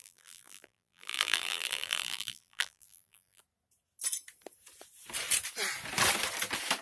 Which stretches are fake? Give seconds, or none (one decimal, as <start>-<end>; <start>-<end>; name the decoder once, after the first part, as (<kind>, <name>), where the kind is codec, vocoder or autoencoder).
0.0-3.4 (vocoder, BigVGAN v2)